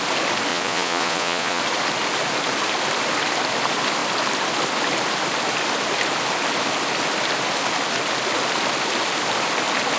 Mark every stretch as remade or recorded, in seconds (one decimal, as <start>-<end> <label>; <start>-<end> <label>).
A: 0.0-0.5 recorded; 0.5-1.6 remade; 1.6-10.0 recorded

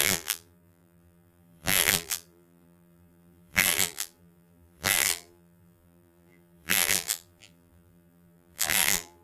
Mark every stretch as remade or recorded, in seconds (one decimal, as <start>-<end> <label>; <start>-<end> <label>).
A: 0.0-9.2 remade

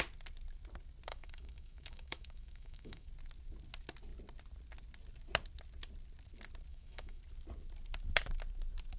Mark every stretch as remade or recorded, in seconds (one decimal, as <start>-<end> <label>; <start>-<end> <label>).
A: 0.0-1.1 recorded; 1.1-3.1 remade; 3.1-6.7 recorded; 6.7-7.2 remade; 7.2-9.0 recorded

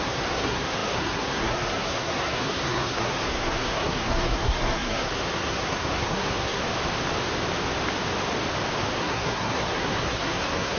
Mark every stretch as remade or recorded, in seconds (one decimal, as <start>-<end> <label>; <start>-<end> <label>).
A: 0.0-6.6 remade; 6.6-9.0 recorded; 9.0-10.8 remade

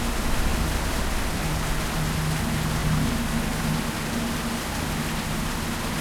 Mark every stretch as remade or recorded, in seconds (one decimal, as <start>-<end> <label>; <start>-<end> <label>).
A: 0.0-6.0 recorded

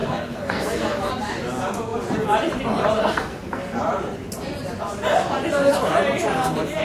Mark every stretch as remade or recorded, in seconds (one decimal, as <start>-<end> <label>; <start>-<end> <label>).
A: 0.0-1.1 remade; 1.1-3.0 recorded; 3.0-3.8 remade; 3.8-6.8 recorded